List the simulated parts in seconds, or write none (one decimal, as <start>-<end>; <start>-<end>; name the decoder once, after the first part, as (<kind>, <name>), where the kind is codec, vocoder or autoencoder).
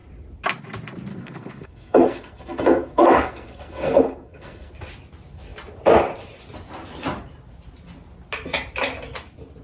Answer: 1.1-4.7 (codec, SNAC)